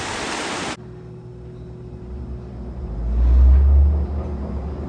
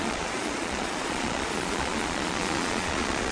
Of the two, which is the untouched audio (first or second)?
first